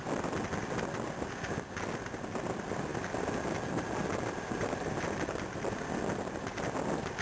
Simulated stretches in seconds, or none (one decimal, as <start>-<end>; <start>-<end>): none